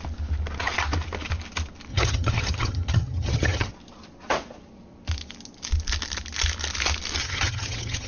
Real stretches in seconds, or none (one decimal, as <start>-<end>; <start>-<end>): 0.0-1.9; 3.7-7.2